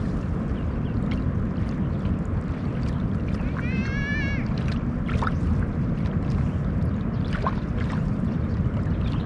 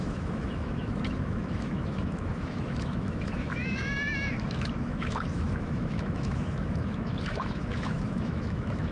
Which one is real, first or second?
first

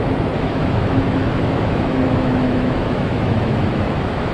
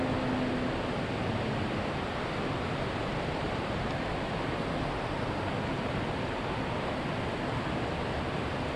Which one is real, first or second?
second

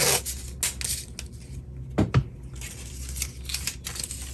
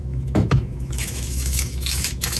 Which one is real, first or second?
first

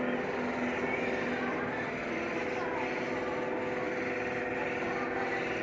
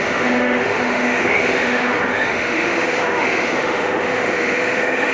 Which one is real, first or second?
first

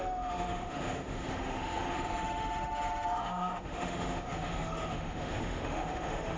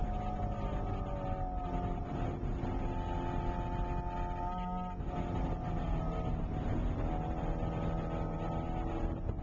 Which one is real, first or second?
second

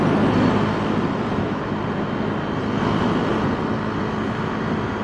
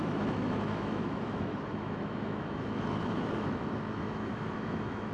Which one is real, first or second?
first